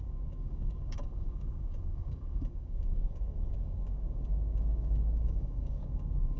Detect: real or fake fake